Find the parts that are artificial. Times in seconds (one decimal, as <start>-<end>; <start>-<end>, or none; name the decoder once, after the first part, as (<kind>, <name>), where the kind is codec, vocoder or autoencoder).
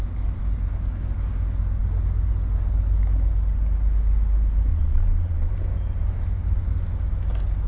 4.7-5.5 (vocoder, Vocos)